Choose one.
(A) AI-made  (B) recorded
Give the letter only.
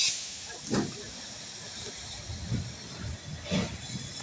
B